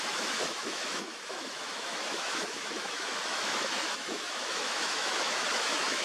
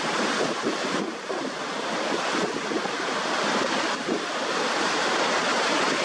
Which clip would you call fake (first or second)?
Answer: first